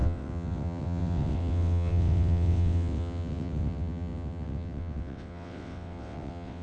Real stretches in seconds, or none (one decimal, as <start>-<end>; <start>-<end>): none